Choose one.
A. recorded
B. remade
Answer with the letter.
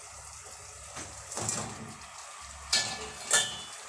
A